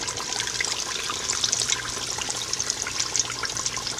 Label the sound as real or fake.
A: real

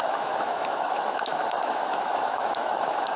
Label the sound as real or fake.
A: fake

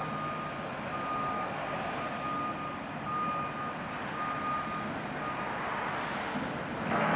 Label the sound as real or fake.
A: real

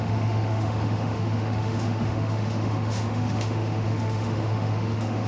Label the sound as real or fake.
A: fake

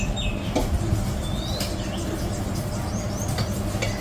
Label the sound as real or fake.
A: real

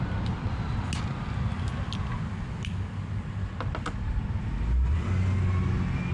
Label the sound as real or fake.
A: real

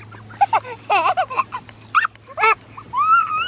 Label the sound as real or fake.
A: real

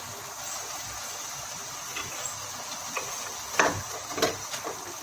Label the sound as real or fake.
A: real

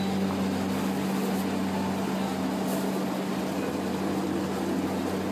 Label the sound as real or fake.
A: real